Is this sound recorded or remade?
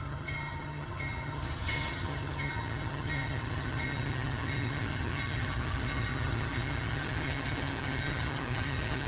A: remade